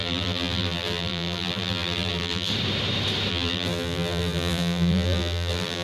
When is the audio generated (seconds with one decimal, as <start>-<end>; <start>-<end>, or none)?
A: 0.0-2.5; 3.3-5.8